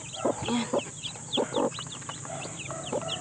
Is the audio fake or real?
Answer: real